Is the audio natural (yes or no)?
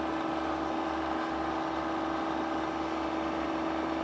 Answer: yes